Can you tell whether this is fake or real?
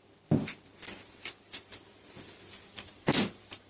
fake